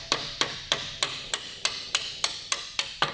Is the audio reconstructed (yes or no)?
no